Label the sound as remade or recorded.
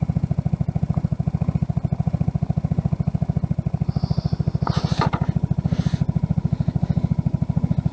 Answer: recorded